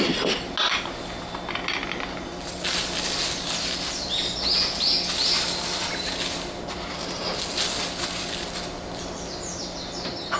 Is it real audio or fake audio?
real